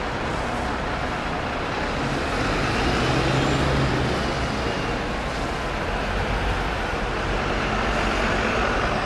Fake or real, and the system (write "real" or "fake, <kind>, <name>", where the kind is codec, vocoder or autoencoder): real